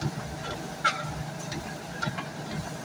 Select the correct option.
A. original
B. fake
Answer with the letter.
A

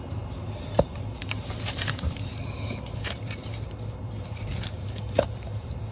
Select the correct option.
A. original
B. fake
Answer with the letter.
B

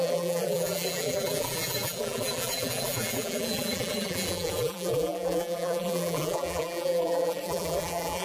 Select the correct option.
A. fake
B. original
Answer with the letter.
A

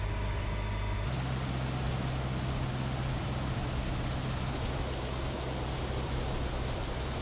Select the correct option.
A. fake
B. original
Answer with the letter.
B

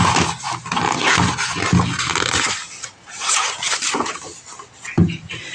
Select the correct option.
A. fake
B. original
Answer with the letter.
B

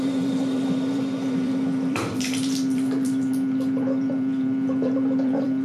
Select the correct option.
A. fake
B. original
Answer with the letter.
A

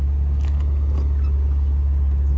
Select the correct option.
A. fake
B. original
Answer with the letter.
B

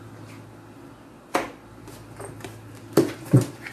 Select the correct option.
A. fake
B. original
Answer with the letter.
B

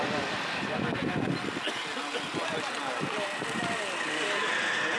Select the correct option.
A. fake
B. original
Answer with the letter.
B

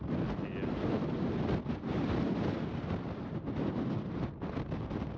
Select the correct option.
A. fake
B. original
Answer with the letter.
B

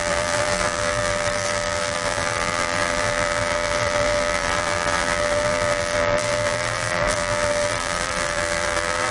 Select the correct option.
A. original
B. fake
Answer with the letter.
B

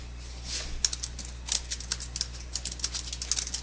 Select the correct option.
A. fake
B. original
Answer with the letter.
B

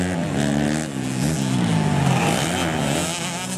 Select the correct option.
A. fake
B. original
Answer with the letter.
B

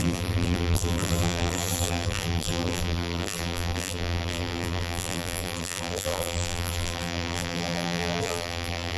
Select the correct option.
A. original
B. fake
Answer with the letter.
B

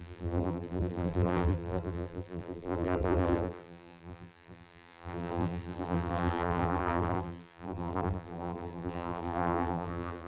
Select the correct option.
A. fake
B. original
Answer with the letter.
A